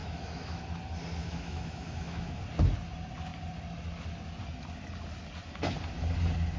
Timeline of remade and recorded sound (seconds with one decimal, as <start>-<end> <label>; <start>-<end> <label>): 0.0-0.6 remade; 0.6-1.2 recorded; 1.2-2.4 remade; 2.4-6.6 recorded